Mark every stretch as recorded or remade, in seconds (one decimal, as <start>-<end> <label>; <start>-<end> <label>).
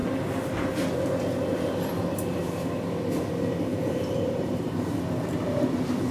0.0-3.7 recorded; 3.7-5.4 remade; 5.4-6.1 recorded